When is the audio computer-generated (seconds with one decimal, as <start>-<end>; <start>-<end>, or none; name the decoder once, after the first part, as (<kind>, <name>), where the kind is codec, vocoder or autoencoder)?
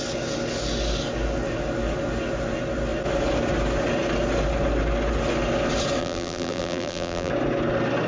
6.0-7.3 (vocoder, BigVGAN v2)